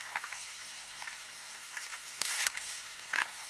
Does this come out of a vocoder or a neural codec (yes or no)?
yes